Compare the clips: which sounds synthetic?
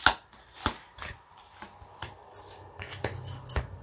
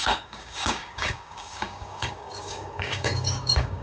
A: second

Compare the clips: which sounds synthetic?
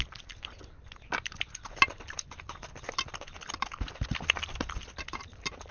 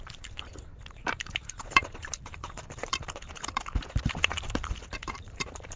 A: second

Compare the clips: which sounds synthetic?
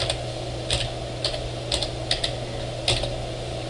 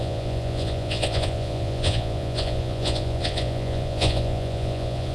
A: second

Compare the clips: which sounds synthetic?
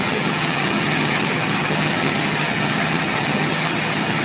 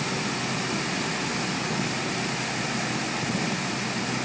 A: first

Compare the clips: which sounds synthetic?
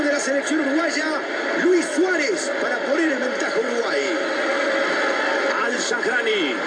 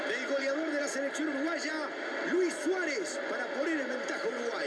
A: first